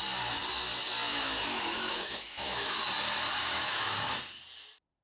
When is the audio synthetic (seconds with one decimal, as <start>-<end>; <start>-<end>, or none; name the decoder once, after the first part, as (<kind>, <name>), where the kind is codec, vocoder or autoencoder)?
1.1-2.8 (autoencoder, DAC-VAE); 3.4-4.2